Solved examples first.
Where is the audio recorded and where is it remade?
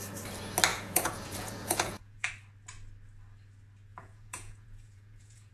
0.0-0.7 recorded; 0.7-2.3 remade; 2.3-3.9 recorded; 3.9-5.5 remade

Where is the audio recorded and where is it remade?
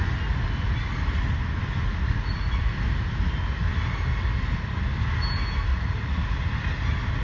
0.0-2.0 recorded; 2.0-2.7 remade; 2.7-5.7 recorded; 5.7-6.4 remade; 6.4-7.2 recorded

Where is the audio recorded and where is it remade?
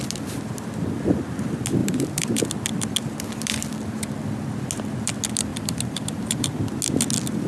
0.0-1.8 recorded; 1.8-2.4 remade; 2.4-5.5 recorded; 5.5-6.5 remade; 6.5-7.5 recorded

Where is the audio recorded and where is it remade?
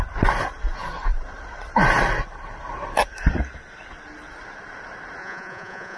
0.0-5.2 recorded; 5.2-6.0 remade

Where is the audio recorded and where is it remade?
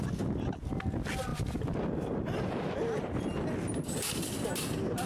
0.0-5.1 recorded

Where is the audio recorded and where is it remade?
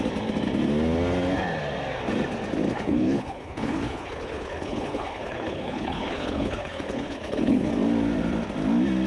0.0-2.7 recorded; 2.7-7.7 remade; 7.7-9.1 recorded